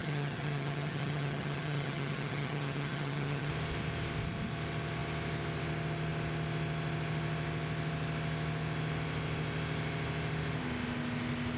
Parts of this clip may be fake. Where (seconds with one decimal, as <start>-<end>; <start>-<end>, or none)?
0.0-3.5